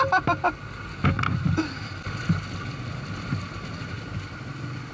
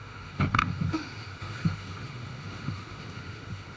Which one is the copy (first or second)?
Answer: second